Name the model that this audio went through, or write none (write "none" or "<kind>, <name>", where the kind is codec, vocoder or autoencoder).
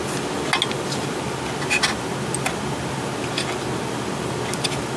none